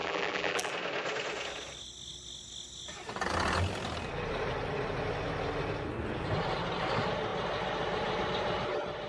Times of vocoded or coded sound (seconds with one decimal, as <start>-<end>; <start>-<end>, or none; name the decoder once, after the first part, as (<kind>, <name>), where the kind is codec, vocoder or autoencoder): 0.0-0.7 (vocoder, BigVGAN v2)